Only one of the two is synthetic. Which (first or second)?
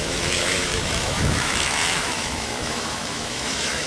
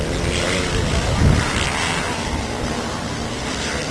first